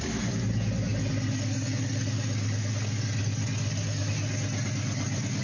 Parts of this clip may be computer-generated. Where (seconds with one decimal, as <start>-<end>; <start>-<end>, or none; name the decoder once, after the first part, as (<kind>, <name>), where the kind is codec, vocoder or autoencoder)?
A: none